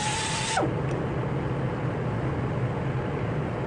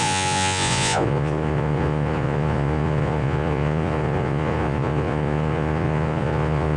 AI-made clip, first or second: second